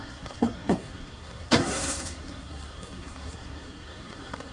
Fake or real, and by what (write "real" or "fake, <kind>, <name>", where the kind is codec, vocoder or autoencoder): fake, codec, SNAC